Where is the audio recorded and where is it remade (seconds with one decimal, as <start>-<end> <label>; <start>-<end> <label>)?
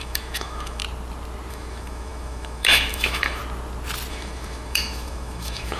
0.0-0.8 remade; 0.8-1.5 recorded; 1.5-3.4 remade; 3.4-4.1 recorded; 4.1-5.8 remade